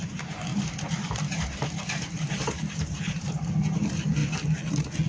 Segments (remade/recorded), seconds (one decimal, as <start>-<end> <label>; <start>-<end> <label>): 0.0-0.5 recorded; 0.5-3.5 remade; 3.5-5.1 recorded